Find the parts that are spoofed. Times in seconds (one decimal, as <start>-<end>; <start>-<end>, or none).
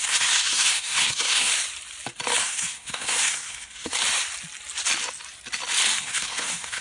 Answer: 0.0-1.5; 2.4-4.0; 6.0-6.8